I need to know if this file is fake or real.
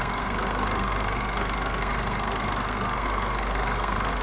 fake